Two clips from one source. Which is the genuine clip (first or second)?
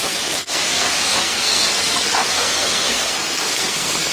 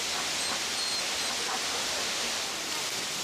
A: second